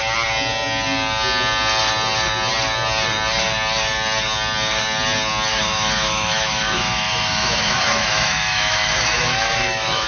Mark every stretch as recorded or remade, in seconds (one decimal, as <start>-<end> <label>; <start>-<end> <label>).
0.0-5.5 recorded; 5.5-10.1 remade